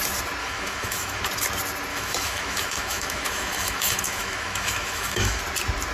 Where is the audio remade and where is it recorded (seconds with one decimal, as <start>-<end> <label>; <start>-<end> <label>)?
0.0-0.4 recorded; 0.4-1.2 remade; 1.2-1.9 recorded; 1.9-5.4 remade; 5.4-5.9 recorded